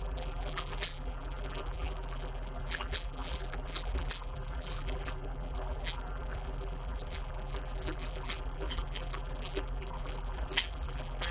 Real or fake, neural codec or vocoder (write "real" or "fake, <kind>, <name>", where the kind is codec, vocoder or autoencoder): fake, vocoder, BigVGAN v2